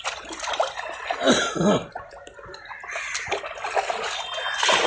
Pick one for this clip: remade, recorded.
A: recorded